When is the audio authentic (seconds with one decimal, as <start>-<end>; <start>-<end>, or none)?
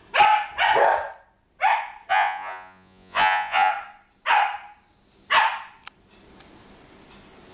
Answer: 0.0-2.1; 3.7-7.5